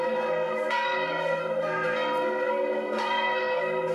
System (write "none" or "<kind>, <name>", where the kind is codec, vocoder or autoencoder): codec, SNAC